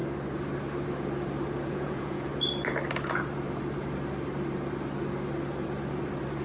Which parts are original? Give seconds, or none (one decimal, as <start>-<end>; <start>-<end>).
0.0-1.7; 2.3-6.4